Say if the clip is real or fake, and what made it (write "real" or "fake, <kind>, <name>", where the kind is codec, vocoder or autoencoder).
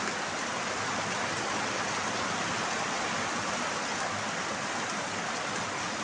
real